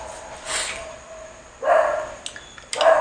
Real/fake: real